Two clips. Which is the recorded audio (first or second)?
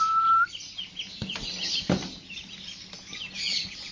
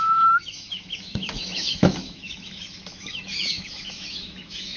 first